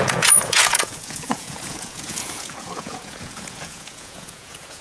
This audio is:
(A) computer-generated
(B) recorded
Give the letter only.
A